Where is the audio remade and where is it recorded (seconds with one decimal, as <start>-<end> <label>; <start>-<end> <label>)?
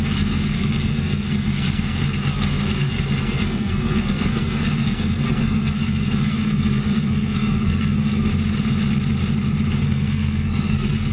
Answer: 0.0-8.3 remade; 8.3-9.8 recorded; 9.8-11.1 remade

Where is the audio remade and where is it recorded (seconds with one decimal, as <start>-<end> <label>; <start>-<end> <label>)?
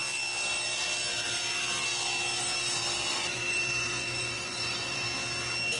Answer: 0.0-3.1 recorded; 3.1-5.0 remade; 5.0-5.8 recorded